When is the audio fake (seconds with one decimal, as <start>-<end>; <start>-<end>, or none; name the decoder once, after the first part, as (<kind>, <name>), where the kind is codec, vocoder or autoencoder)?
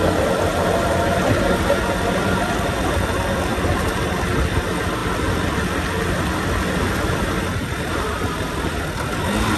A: 0.5-1.8 (vocoder, BigVGAN v2)